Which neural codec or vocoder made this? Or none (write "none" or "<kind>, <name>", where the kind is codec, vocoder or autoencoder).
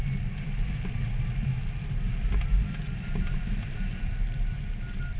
vocoder, BigVGAN v2